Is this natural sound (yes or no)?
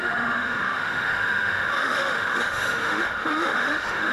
no